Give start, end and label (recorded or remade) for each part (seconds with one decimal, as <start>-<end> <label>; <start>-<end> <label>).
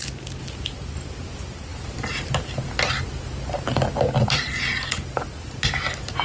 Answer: 0.0-6.2 recorded